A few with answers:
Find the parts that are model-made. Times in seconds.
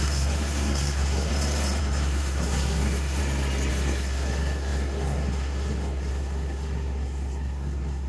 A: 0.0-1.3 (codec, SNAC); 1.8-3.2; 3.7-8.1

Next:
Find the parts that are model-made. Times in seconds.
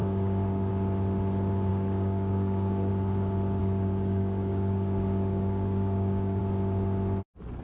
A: 0.0-0.7 (codec, DAC); 1.7-2.9; 3.6-6.4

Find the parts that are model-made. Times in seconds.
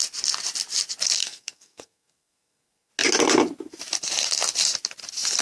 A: 1.2-2.9 (codec, SNAC)